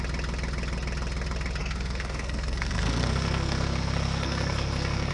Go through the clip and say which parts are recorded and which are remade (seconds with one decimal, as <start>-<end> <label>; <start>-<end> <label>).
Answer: 0.0-1.6 recorded; 1.6-5.1 remade